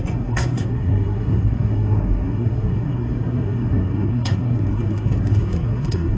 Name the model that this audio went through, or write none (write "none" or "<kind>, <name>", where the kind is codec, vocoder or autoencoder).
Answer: codec, SNAC